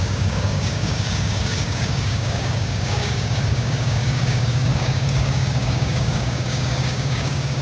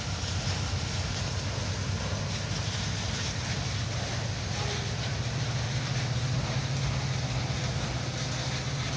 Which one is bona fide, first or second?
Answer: second